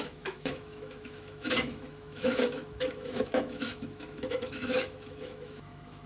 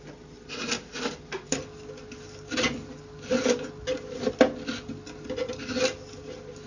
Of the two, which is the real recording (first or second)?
second